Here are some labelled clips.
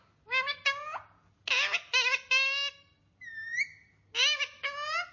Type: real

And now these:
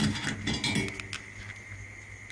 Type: real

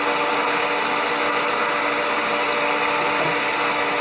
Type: real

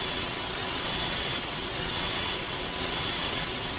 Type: fake